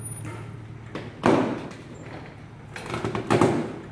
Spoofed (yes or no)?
no